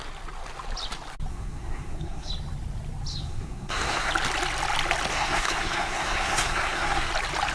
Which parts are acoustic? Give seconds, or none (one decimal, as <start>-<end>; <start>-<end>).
0.0-1.3; 2.3-3.1; 4.1-5.1; 7.1-7.5